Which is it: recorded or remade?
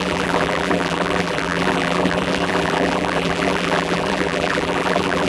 remade